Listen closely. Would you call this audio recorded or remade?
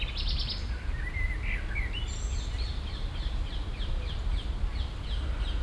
recorded